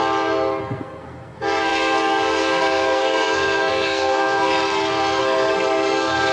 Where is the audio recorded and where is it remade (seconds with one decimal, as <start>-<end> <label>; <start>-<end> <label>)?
0.0-0.6 recorded; 0.6-4.5 remade; 4.5-5.2 recorded; 5.2-6.3 remade